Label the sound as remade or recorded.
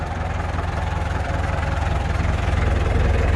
remade